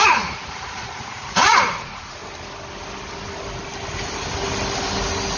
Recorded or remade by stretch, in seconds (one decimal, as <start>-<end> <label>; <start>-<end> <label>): 0.0-2.2 remade; 2.2-5.4 recorded